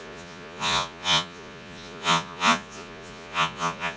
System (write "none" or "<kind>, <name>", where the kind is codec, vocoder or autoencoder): vocoder, Vocos